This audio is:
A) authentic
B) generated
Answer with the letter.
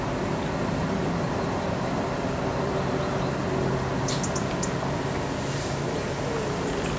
A